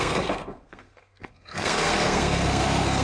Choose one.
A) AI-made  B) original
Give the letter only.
A